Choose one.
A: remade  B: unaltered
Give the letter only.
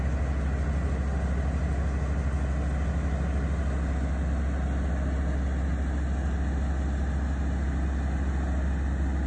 B